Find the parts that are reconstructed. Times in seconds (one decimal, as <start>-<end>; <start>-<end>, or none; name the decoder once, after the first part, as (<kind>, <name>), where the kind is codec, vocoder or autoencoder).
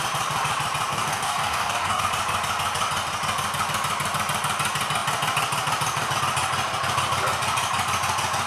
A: 0.9-2.0 (codec, DAC)